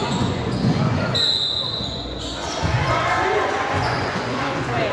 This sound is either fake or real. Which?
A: fake